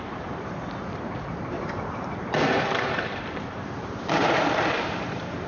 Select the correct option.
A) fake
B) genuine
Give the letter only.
A